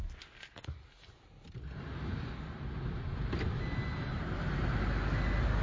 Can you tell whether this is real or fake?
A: real